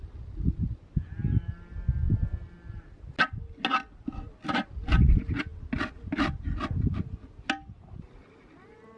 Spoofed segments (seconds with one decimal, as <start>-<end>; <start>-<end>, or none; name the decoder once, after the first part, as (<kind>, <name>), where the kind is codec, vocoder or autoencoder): none